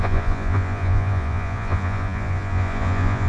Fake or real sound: fake